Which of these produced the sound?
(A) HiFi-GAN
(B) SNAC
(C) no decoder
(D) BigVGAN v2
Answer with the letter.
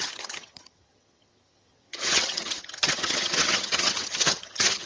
A